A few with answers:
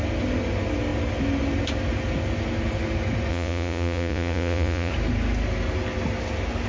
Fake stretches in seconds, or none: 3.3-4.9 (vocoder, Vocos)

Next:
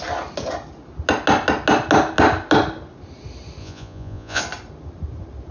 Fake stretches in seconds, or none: 3.6-4.4 (vocoder, Vocos)

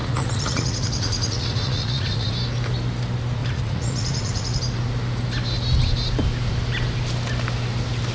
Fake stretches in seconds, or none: 0.0-2.3 (vocoder, Vocos); 3.4-4.6

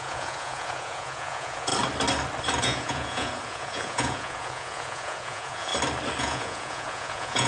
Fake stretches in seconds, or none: 0.0-1.7 (vocoder, Vocos); 2.6-5.7; 6.2-7.5

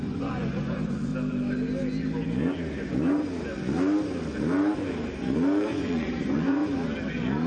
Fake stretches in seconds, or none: 0.0-1.1 (vocoder, Vocos); 5.6-6.7

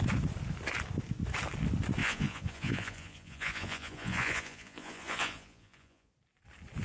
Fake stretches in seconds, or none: 2.0-6.1 (vocoder, Vocos)